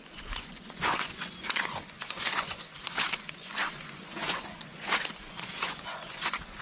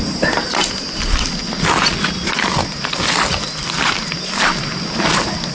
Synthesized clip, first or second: first